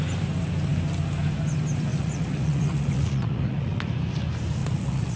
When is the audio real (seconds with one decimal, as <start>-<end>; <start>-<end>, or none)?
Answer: 0.0-1.9; 3.9-4.6